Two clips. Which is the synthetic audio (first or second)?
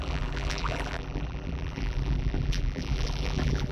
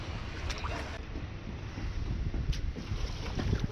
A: first